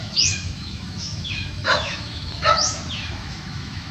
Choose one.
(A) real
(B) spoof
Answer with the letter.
B